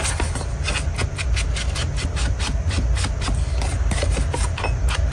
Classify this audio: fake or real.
real